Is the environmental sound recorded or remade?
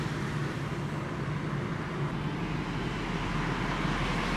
recorded